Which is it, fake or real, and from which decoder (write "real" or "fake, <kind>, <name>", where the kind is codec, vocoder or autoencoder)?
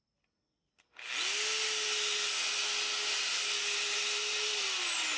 real